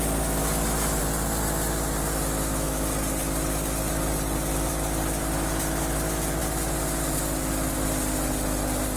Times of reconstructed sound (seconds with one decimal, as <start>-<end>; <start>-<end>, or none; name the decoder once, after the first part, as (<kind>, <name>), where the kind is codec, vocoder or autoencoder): none